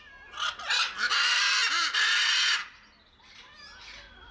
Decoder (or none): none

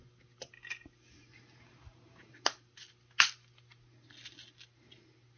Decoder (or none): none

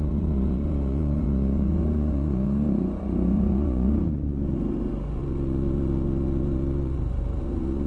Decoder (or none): vocoder, Vocos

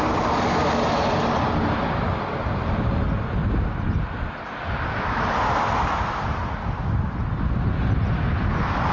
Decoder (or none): none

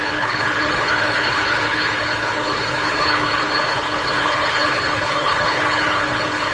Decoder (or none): codec, HILCodec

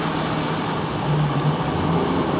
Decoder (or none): none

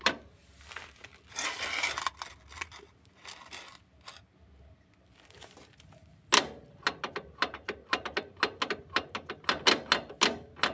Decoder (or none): none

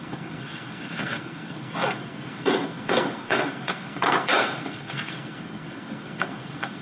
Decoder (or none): codec, SNAC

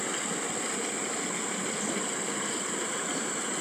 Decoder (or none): none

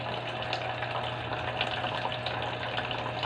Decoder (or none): none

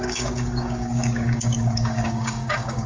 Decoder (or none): codec, DAC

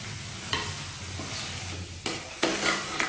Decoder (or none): none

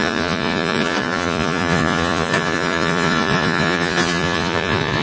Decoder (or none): vocoder, Vocos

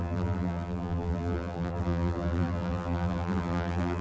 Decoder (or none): vocoder, BigVGAN v2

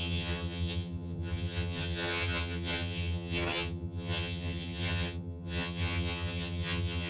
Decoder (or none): vocoder, HiFi-GAN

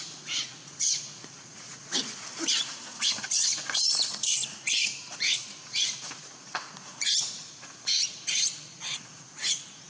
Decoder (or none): vocoder, Vocos